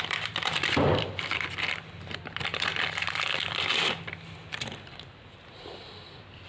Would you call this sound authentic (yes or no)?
no